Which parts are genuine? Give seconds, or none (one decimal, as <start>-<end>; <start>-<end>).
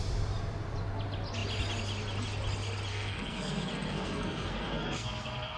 0.0-2.9